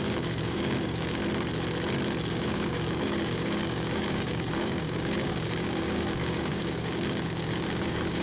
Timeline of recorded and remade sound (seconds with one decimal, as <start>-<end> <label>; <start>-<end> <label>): 0.0-1.2 remade; 1.2-2.3 recorded; 2.3-8.2 remade

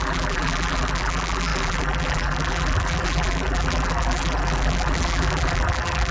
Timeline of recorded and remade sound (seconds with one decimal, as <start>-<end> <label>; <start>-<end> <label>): 0.0-6.1 remade

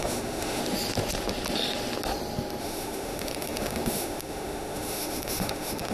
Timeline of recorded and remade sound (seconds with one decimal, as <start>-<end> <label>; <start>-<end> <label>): 0.0-0.6 remade; 0.6-2.6 recorded; 2.6-5.9 remade